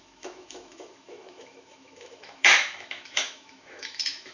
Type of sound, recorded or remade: remade